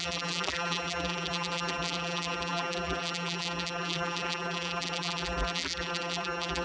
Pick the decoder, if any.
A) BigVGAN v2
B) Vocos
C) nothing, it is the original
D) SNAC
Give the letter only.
A